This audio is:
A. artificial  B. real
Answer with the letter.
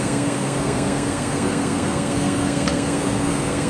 A